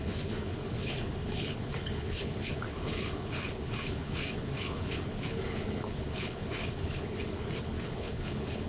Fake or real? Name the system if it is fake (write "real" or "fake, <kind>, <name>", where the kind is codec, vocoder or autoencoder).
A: fake, codec, HILCodec